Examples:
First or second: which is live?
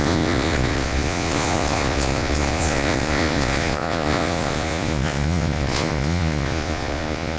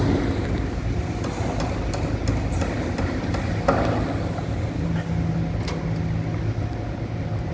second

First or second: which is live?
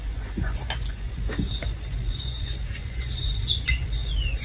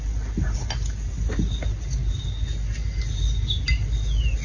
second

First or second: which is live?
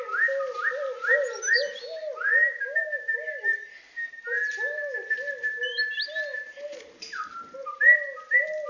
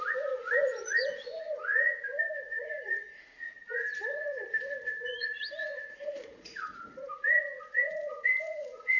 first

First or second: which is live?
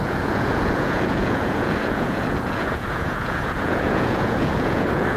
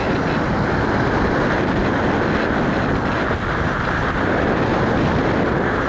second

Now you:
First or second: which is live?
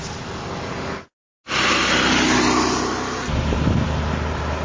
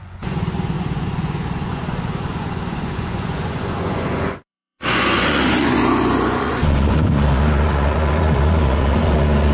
first